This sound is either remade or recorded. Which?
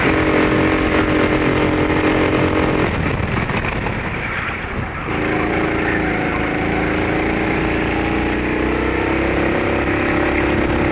recorded